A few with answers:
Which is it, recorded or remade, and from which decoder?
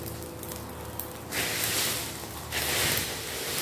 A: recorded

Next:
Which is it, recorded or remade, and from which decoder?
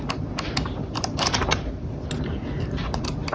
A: remade, vocoder, BigVGAN v2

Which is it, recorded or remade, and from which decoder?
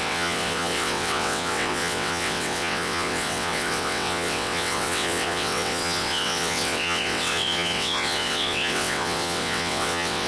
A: remade, vocoder, WaveNeXt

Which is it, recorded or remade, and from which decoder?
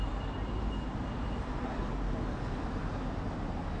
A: recorded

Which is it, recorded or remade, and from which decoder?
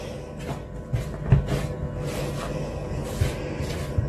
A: recorded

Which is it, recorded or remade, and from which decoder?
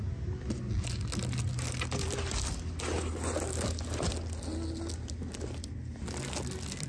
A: recorded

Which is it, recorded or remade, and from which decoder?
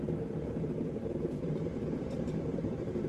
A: remade, vocoder, BigVGAN v2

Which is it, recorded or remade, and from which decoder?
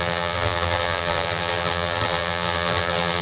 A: remade, vocoder, BigVGAN v2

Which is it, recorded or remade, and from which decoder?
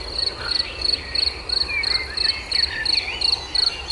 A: recorded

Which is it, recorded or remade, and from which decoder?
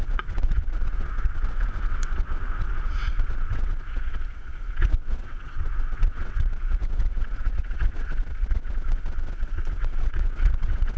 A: remade, vocoder, WaveNeXt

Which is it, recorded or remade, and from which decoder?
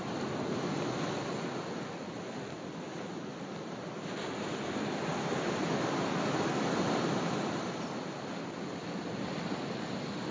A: recorded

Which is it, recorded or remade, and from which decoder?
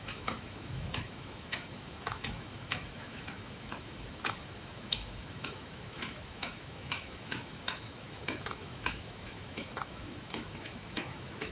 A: remade, autoencoder, DAC-VAE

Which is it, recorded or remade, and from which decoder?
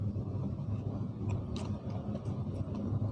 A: recorded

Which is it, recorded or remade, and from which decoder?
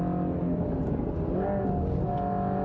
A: recorded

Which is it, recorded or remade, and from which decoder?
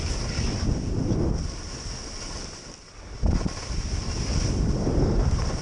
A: recorded